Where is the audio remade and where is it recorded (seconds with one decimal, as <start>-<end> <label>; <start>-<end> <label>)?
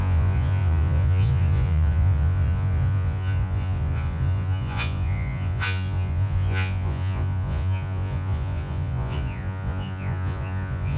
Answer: 0.0-11.0 remade